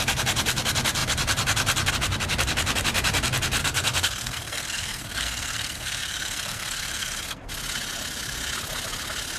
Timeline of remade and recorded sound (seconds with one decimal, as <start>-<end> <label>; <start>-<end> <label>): 0.0-3.6 recorded; 3.6-7.5 remade; 7.5-9.4 recorded